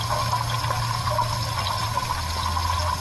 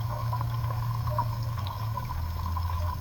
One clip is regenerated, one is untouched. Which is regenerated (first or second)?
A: second